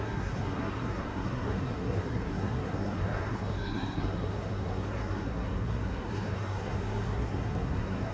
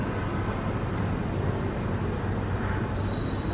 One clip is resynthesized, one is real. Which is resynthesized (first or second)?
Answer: first